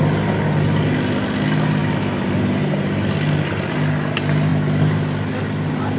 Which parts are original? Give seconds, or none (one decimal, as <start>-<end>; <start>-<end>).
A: 0.0-6.0